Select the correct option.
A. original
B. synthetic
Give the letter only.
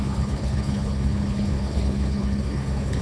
B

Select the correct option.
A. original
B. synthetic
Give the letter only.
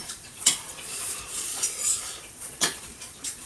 B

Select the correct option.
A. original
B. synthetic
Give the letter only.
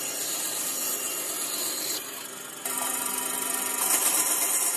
A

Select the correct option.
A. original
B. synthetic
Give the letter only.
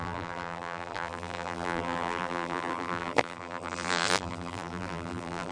B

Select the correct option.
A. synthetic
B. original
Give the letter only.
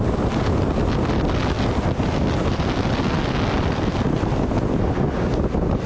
B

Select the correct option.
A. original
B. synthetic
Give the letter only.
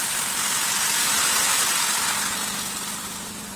A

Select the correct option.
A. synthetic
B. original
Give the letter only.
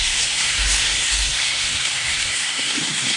A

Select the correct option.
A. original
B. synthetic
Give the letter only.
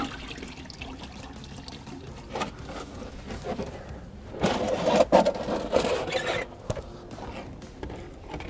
A